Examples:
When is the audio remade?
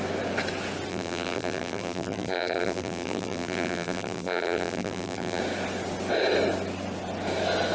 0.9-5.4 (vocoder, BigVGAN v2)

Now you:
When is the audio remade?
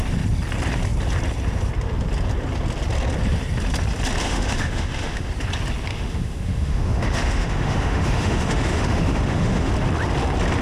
4.2-5.3 (autoencoder, DAC-VAE); 5.9-9.7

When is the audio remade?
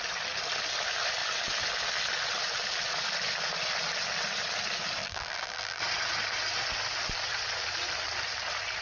5.0-5.8 (vocoder, BigVGAN v2)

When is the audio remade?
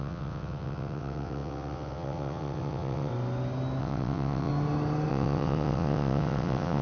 0.0-3.1 (vocoder, WaveNeXt); 3.8-4.5; 5.1-6.8